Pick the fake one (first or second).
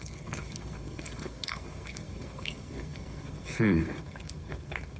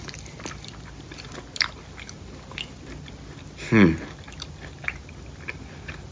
first